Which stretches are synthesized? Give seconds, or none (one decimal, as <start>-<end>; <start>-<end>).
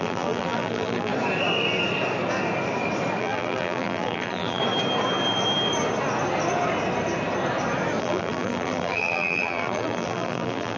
0.0-1.1; 3.2-4.6; 8.0-10.8